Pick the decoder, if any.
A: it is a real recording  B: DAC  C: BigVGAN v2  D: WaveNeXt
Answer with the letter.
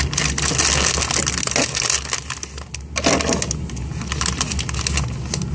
A